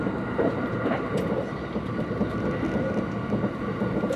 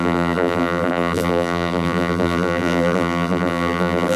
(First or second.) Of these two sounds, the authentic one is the first